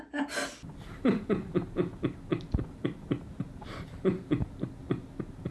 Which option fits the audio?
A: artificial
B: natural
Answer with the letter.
B